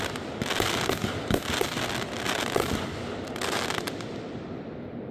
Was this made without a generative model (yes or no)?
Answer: yes